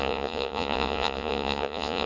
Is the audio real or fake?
fake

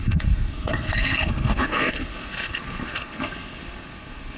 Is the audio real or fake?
fake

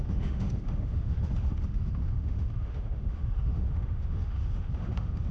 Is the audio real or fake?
fake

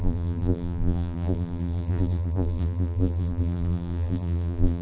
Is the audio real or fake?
fake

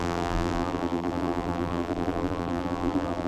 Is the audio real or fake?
fake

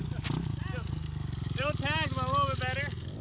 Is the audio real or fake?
real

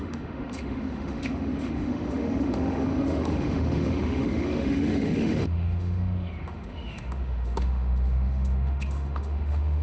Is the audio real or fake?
fake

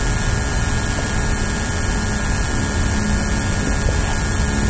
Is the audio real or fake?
real